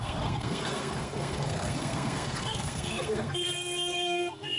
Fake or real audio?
fake